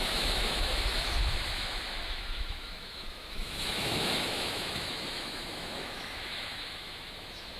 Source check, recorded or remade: remade